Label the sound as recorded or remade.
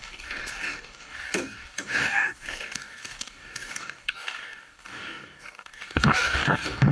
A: remade